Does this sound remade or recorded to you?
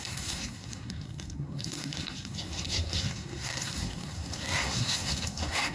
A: remade